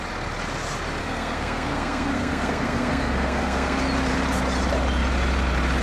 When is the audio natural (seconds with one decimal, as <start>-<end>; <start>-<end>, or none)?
0.0-1.0; 3.8-5.8